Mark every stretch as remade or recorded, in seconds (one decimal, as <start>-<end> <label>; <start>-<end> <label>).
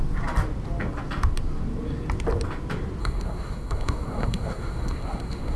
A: 0.0-3.0 recorded; 3.0-5.6 remade